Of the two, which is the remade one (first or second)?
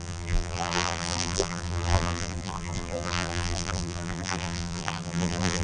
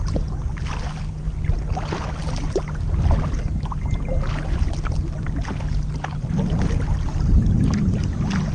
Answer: first